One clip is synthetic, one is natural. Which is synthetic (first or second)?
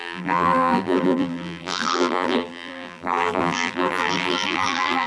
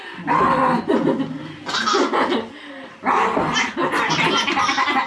first